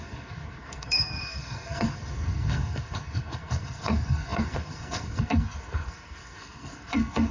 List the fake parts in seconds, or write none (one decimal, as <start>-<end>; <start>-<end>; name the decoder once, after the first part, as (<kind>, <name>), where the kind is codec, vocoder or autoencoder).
0.0-7.3 (codec, SNAC)